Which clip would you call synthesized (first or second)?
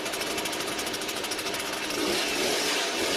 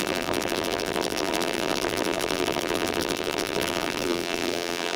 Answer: second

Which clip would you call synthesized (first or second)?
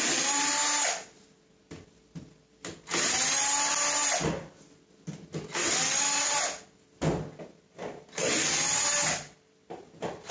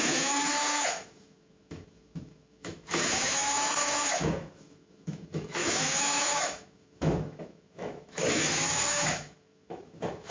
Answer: second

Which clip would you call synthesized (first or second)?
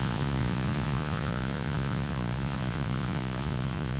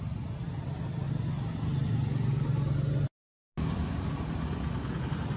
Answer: first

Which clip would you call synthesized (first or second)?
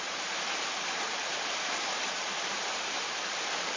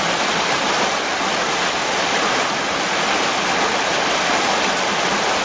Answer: first